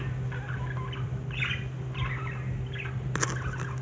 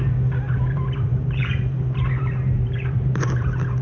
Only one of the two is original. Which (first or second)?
first